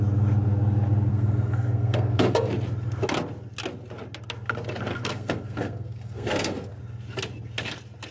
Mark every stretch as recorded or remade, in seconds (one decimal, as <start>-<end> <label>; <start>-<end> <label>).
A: 0.0-1.1 recorded; 1.1-2.5 remade; 2.5-4.9 recorded; 4.9-6.8 remade; 6.8-8.1 recorded